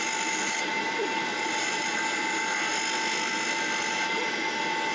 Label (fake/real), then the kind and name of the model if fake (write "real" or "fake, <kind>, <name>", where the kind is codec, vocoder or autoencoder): real